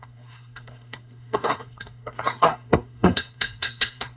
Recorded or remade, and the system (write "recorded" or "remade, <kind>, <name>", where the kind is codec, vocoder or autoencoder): remade, codec, SNAC